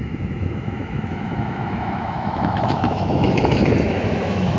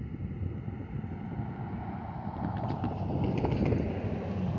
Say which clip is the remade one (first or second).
first